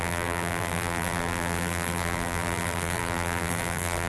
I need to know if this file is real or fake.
fake